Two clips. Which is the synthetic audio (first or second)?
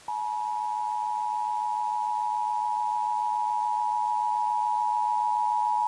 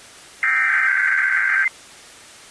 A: second